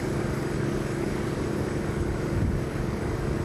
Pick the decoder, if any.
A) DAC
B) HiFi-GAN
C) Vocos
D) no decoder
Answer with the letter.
A